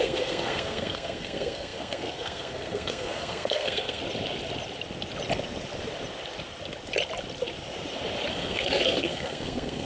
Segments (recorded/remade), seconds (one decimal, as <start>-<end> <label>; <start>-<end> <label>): 0.0-4.0 remade; 4.0-8.3 recorded; 8.3-9.8 remade